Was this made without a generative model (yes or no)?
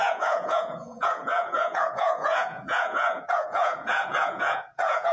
no